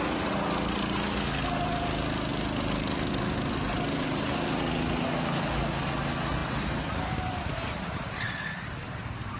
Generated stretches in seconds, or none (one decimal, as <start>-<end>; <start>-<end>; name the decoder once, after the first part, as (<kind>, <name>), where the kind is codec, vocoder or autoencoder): 2.3-3.1 (vocoder, BigVGAN v2); 6.4-7.5